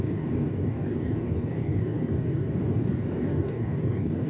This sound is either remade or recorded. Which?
remade